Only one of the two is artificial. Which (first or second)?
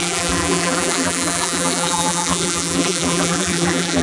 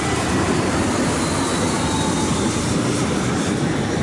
first